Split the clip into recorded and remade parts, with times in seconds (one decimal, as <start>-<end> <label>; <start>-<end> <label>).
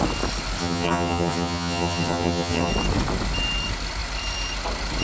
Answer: 0.0-0.6 recorded; 0.6-2.7 remade; 2.7-5.0 recorded